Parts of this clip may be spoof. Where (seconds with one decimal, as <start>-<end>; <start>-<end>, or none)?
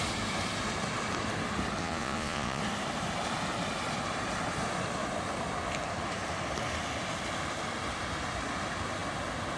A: 1.8-2.6